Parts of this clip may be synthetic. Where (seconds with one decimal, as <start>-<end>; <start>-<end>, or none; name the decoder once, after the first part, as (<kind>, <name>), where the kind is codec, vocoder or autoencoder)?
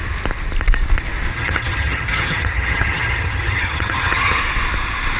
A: 1.3-4.4 (vocoder, HiFi-GAN)